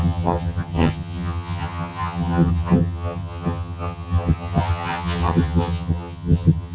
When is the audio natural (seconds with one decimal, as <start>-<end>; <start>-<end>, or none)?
none